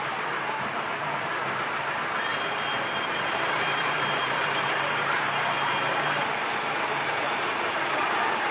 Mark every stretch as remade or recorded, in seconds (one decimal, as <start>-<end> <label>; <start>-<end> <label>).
0.0-8.5 remade